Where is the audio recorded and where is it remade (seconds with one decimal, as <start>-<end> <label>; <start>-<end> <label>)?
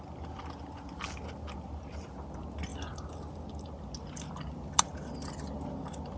0.0-6.2 recorded